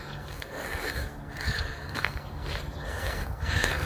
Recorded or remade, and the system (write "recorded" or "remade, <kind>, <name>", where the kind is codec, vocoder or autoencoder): remade, codec, SNAC